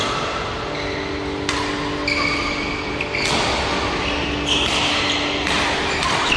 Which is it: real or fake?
real